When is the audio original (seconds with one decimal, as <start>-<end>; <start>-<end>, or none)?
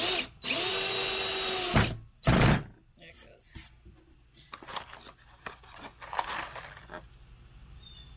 0.0-8.2